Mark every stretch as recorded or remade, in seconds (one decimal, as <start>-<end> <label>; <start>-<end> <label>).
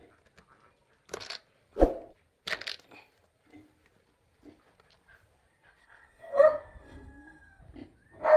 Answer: 0.0-5.8 recorded; 5.8-7.6 remade; 7.6-8.4 recorded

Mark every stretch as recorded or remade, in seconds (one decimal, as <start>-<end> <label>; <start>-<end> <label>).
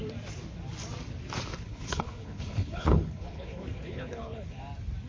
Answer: 0.0-1.5 recorded; 1.5-4.6 remade; 4.6-5.1 recorded